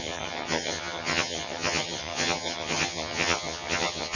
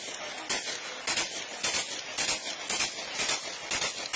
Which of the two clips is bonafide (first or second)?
second